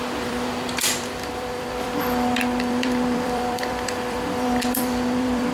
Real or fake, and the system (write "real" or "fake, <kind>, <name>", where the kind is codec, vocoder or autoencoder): fake, vocoder, BigVGAN v2